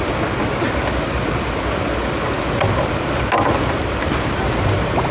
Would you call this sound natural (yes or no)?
yes